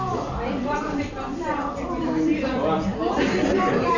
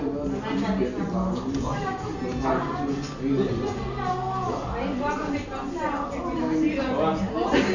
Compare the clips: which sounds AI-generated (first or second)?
first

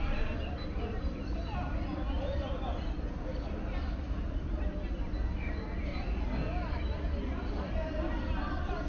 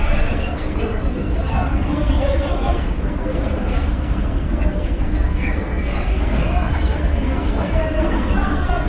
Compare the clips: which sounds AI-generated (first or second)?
second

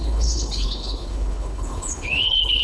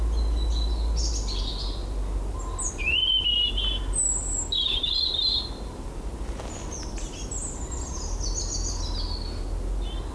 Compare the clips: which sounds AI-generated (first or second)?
first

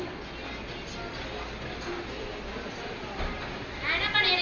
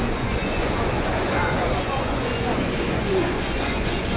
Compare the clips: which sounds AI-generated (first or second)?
second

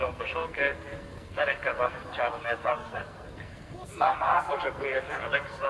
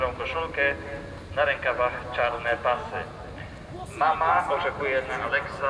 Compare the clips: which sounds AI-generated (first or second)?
first